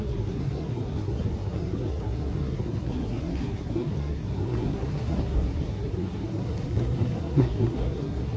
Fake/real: fake